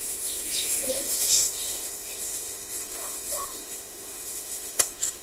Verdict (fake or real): fake